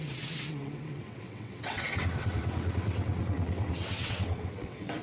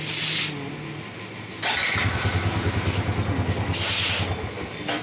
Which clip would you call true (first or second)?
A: second